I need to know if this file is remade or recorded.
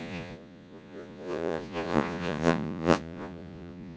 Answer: remade